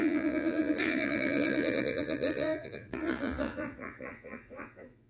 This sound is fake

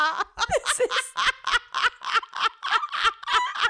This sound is real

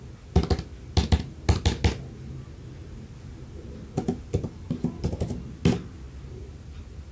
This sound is real